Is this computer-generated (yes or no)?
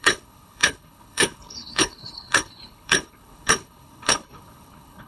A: yes